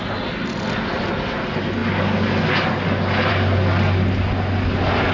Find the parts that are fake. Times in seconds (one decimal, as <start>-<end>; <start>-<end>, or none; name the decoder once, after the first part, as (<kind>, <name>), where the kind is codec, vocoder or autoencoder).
none